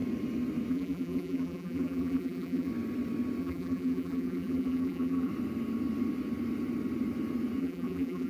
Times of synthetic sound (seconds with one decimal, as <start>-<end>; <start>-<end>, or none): 0.7-2.7; 3.4-5.3; 7.6-8.3